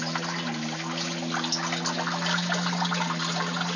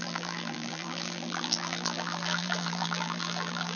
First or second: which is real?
first